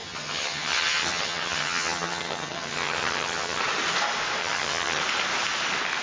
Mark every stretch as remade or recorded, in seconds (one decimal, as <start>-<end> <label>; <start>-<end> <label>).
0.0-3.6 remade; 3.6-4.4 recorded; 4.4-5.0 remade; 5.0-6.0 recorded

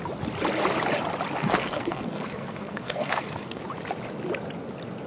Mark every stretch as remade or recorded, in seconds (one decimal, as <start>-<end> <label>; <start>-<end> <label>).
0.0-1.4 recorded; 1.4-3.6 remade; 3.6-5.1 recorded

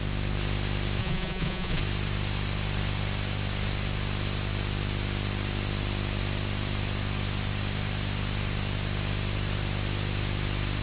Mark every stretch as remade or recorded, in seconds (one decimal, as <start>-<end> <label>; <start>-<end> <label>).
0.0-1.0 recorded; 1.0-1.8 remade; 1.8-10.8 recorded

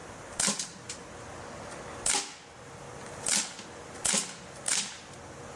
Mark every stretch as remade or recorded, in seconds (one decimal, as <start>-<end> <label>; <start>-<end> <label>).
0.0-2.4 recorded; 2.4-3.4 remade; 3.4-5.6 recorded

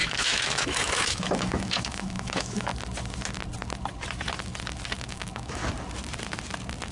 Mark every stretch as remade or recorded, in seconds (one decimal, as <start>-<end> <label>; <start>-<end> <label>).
0.0-2.7 remade; 2.7-5.0 recorded; 5.0-5.6 remade; 5.6-6.9 recorded